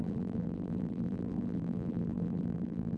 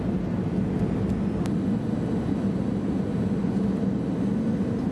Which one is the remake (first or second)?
first